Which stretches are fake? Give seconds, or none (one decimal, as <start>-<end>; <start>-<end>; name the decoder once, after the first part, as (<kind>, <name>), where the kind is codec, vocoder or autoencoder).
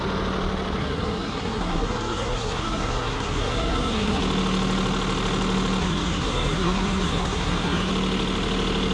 0.8-4.2 (codec, SNAC); 5.8-7.9